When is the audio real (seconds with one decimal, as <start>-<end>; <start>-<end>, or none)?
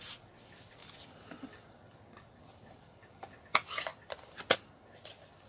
0.8-1.6; 3.9-5.0